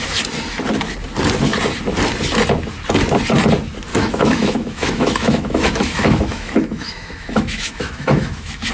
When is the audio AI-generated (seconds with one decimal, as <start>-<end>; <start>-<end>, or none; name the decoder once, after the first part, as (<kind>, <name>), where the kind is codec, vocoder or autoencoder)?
3.9-8.7 (autoencoder, DAC-VAE)